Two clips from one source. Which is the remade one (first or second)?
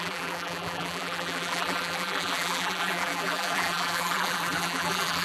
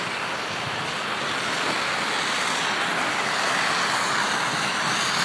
first